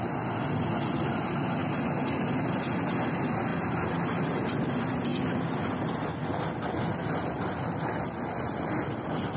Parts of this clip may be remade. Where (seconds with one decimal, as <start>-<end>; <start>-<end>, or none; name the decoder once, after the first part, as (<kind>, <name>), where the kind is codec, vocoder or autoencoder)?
none